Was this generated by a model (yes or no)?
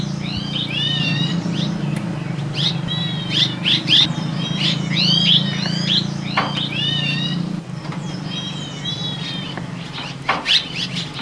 no